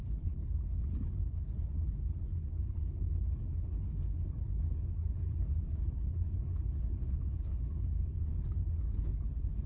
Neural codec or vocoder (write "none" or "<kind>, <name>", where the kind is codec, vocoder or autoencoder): codec, HILCodec